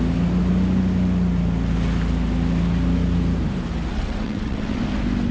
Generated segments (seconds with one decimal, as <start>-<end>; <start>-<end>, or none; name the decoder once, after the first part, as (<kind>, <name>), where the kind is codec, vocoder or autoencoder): 3.9-4.8 (vocoder, WaveNeXt)